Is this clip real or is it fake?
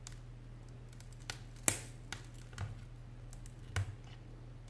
real